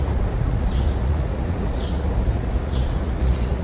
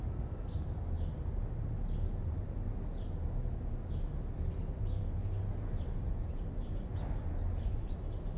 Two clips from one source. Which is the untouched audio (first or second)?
second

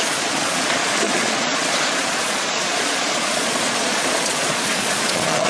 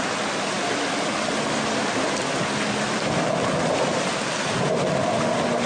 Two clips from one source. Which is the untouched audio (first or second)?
second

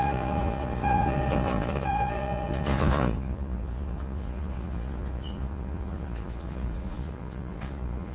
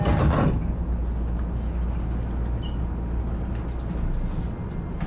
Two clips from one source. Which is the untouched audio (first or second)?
second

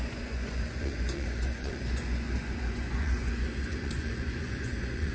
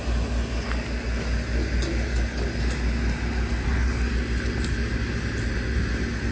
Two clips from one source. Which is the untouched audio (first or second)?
second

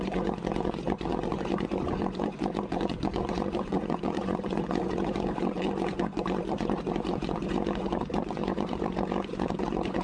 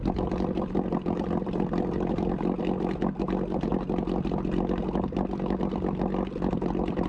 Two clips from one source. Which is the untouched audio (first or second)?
second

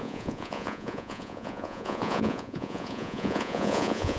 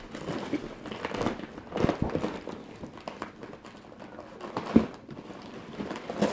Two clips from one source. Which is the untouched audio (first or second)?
second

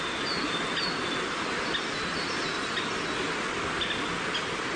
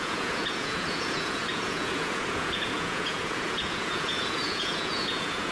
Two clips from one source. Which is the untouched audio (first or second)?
first